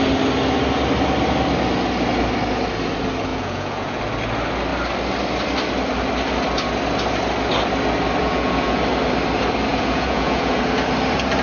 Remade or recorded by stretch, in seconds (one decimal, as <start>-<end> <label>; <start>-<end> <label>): 0.0-3.3 recorded; 3.3-4.0 remade; 4.0-8.2 recorded; 8.2-8.8 remade; 8.8-9.7 recorded; 9.7-10.6 remade; 10.6-11.4 recorded

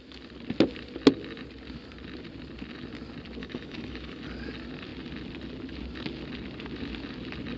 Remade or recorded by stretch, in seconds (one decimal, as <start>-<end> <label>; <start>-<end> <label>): 0.0-3.4 recorded; 3.4-4.2 remade; 4.2-7.6 recorded

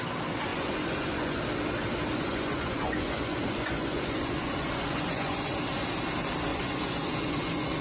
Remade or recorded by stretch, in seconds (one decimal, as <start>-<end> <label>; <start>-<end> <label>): 0.0-0.5 recorded; 0.5-1.4 remade; 1.4-2.1 recorded; 2.1-5.5 remade; 5.5-6.5 recorded; 6.5-7.8 remade

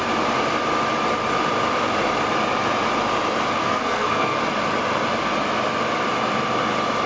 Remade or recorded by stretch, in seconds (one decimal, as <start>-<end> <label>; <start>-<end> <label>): 0.0-3.6 recorded; 3.6-4.4 remade; 4.4-7.1 recorded

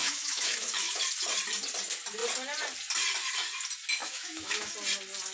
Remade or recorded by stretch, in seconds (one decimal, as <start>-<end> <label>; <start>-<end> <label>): 0.0-1.0 remade; 1.0-4.0 recorded; 4.0-4.7 remade; 4.7-5.3 recorded

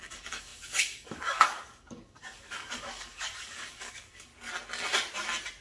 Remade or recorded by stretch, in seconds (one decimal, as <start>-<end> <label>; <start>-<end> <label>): 0.0-4.3 remade; 4.3-5.6 recorded